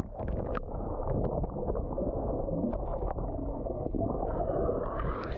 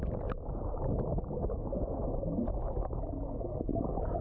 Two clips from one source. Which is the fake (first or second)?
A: first